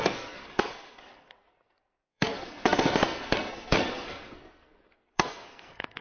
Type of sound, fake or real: fake